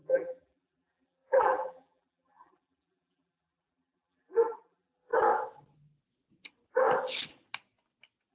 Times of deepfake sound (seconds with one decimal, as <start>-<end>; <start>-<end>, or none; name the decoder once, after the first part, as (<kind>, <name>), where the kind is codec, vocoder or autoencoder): 0.0-5.1 (vocoder, BigVGAN v2)